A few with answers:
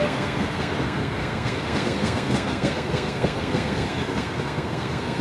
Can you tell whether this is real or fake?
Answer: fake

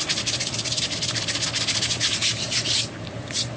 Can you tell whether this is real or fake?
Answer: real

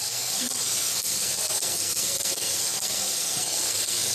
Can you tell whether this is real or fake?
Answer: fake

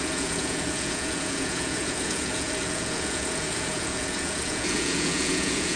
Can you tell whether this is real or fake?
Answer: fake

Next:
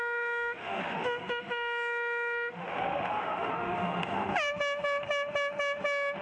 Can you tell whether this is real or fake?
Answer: fake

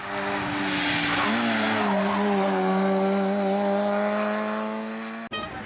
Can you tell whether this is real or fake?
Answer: real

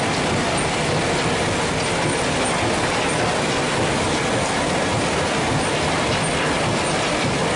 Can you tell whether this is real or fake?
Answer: real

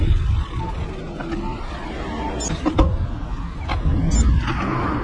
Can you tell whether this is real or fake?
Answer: real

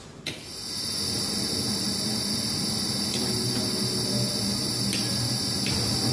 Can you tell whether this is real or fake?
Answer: real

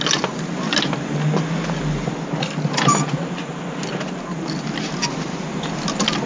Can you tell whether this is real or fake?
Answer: real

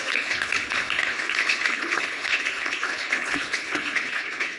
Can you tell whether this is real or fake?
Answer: fake